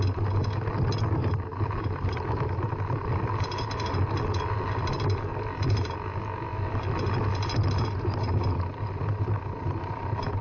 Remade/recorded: recorded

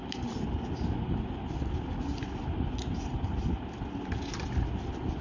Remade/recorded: recorded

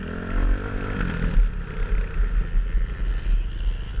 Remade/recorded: recorded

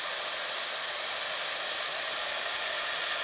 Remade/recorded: recorded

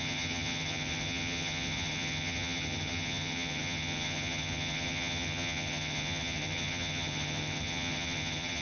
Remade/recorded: remade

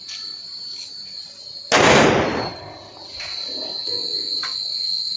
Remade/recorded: recorded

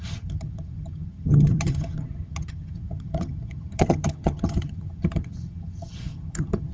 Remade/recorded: remade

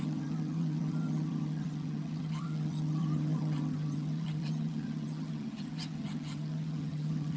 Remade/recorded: remade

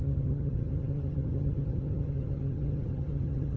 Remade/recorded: remade